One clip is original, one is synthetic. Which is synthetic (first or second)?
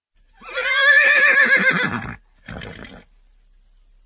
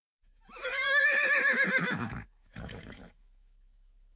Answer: second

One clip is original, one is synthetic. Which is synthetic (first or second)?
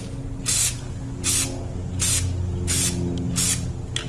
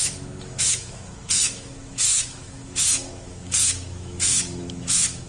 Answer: second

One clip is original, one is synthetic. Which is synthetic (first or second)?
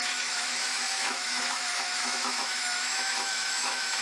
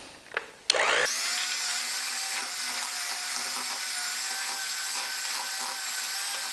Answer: first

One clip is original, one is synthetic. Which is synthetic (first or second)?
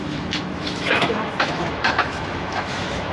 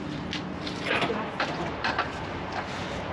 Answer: first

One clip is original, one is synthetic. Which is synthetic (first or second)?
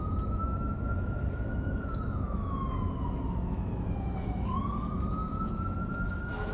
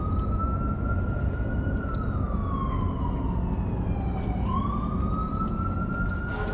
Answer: first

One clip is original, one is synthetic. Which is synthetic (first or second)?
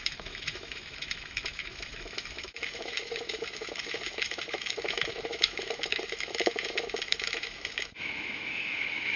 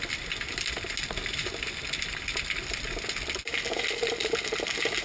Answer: first